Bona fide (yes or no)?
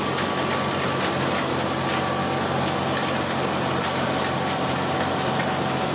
yes